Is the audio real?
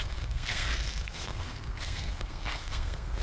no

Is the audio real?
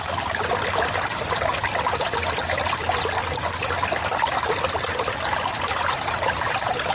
yes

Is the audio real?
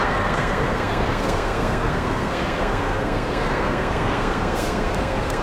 no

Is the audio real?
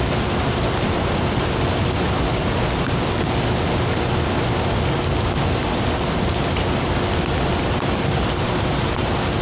yes